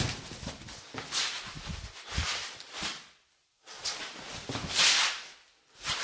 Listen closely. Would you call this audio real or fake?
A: real